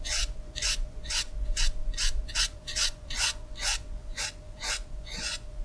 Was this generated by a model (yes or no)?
yes